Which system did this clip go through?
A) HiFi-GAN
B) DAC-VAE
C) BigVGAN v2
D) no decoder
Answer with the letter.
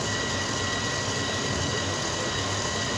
D